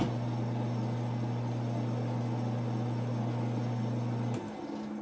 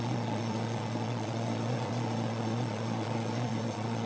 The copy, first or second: second